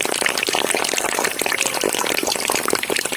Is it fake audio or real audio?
real